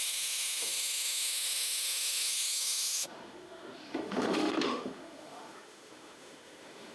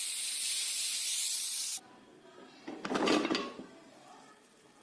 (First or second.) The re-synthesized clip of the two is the first